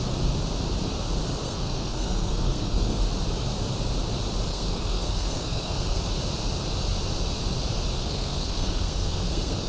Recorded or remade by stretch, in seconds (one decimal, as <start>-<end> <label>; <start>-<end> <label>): 0.0-1.4 recorded; 1.4-3.0 remade; 3.0-4.5 recorded; 4.5-6.0 remade; 6.0-8.0 recorded; 8.0-9.7 remade